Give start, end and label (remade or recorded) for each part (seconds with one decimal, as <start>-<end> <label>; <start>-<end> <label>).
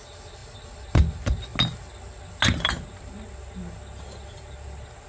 0.0-0.4 recorded; 0.4-0.9 remade; 0.9-5.1 recorded